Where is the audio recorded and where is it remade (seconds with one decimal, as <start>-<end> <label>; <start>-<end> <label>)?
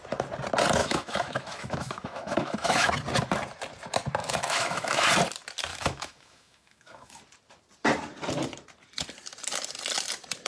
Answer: 0.0-0.8 recorded; 0.8-2.9 remade; 2.9-4.2 recorded; 4.2-5.1 remade; 5.1-5.7 recorded; 5.7-7.2 remade; 7.2-10.5 recorded